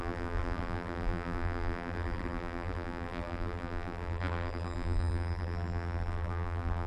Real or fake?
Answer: fake